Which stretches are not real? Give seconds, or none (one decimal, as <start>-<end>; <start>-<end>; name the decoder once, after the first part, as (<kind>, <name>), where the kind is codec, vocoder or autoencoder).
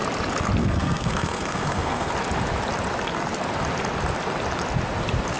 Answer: 0.6-2.1 (codec, SNAC)